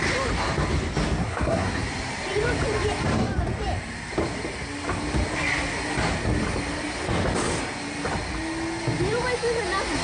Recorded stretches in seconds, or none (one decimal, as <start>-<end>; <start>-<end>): 0.0-1.2; 1.9-10.0